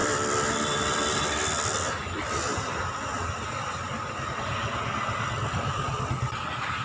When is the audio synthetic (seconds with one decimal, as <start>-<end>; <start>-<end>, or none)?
0.0-1.2